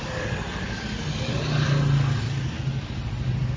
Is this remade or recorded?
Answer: recorded